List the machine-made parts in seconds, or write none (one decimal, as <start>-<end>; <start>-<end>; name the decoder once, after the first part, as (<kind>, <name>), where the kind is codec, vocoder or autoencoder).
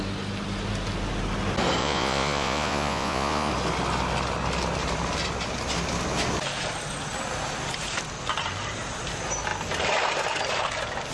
1.8-3.5 (vocoder, Vocos)